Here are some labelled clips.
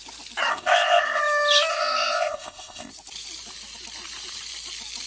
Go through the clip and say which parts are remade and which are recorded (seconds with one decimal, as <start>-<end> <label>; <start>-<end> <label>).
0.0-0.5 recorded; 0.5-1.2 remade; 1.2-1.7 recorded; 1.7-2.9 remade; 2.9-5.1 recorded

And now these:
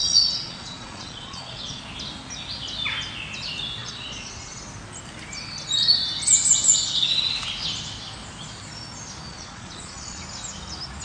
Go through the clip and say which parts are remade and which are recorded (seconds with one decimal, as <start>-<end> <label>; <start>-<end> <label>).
0.0-1.8 remade; 1.8-3.8 recorded; 3.8-4.6 remade; 4.6-9.3 recorded; 9.3-10.2 remade; 10.2-11.0 recorded

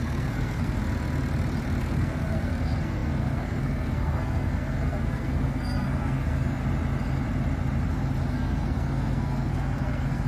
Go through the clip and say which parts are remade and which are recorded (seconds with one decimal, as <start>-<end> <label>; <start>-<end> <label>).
0.0-0.8 remade; 0.8-1.8 recorded; 1.8-6.6 remade; 6.6-8.3 recorded; 8.3-10.3 remade

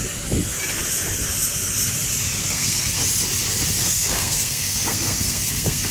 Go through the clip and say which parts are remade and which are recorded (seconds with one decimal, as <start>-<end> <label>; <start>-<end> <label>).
0.0-2.4 recorded; 2.4-3.0 remade; 3.0-3.8 recorded; 3.8-5.9 remade

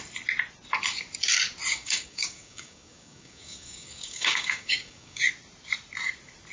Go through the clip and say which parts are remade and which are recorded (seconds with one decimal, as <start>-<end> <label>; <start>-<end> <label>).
0.0-1.7 recorded; 1.7-5.3 remade; 5.3-6.5 recorded

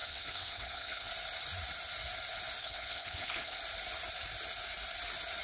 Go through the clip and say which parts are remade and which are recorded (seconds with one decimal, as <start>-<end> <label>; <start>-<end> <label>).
0.0-1.1 remade; 1.1-2.6 recorded; 2.6-3.6 remade; 3.6-5.4 recorded

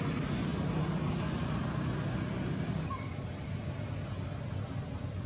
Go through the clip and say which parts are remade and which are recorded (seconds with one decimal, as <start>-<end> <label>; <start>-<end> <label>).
0.0-5.3 recorded